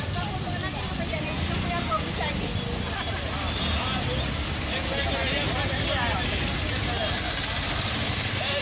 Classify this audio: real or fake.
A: real